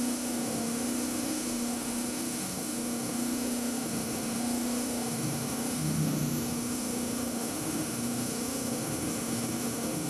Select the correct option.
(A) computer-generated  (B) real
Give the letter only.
A